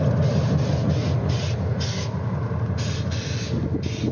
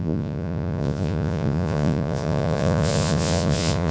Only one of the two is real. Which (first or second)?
first